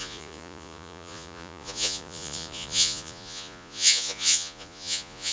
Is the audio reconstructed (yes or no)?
yes